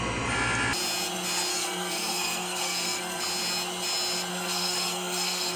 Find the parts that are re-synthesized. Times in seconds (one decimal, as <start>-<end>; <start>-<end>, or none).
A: 1.5-3.2; 4.3-5.6

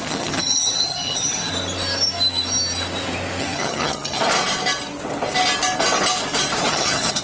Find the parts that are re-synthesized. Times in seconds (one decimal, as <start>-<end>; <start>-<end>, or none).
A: 0.0-1.5; 3.4-4.2; 6.7-7.2

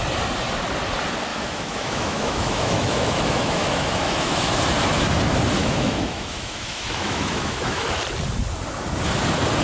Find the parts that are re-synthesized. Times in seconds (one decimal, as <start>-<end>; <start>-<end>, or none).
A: 1.3-4.6; 5.6-8.0

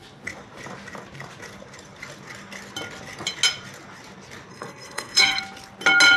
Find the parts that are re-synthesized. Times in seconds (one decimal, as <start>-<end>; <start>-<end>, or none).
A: 4.5-5.4

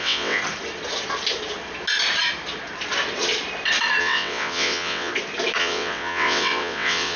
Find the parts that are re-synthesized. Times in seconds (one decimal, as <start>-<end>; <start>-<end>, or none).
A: 0.0-0.4; 4.0-5.1; 5.6-7.2

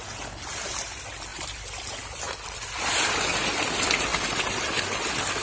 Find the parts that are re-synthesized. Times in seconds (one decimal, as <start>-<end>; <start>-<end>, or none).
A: 1.3-2.2

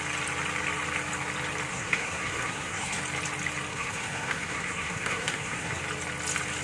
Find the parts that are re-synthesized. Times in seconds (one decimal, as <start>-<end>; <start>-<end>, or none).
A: 1.7-3.0; 3.7-5.8